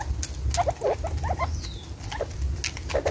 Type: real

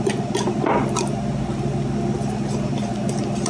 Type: real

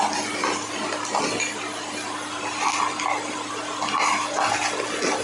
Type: real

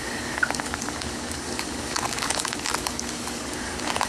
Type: fake